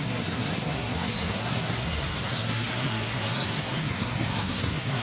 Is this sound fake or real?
fake